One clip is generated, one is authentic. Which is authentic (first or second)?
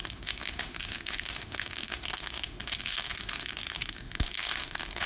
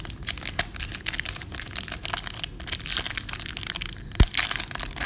second